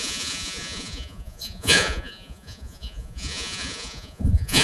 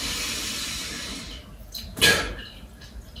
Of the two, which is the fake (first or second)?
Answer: first